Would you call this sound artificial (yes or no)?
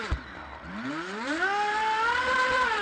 no